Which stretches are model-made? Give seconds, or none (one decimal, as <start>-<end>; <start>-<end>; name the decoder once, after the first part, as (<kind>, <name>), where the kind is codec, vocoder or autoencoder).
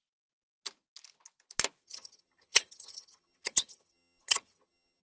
1.8-5.0 (vocoder, HiFi-GAN)